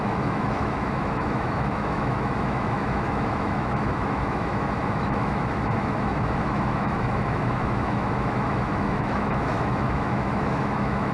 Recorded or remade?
remade